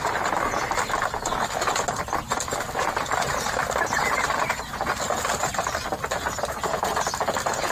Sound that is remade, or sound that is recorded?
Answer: recorded